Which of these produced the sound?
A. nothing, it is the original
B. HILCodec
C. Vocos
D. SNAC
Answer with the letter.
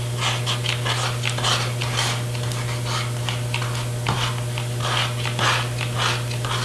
A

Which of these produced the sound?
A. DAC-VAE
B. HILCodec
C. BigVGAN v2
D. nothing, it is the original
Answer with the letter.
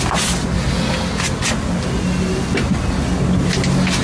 D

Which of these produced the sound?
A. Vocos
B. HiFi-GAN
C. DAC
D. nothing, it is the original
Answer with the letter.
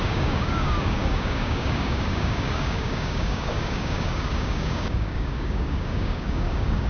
C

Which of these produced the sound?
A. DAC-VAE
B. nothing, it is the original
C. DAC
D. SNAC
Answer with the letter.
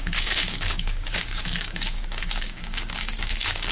C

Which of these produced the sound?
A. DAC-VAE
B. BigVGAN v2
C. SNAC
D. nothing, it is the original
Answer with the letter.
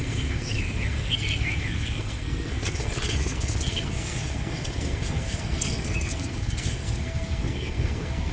C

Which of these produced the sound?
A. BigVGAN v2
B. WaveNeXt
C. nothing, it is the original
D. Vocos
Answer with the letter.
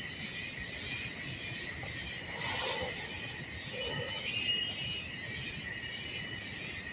C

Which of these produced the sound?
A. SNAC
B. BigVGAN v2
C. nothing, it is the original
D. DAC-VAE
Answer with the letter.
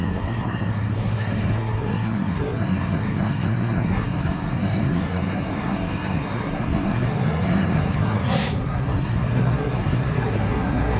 A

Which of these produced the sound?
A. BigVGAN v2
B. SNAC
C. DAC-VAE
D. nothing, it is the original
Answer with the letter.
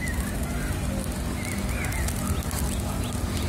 D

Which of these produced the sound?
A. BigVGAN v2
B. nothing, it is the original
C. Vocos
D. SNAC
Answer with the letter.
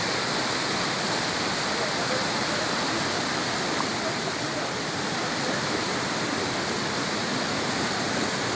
B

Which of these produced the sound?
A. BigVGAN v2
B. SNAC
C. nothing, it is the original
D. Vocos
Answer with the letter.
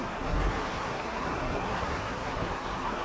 B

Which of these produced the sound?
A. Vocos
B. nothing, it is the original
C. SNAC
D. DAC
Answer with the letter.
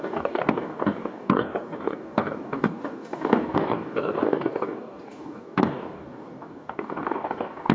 D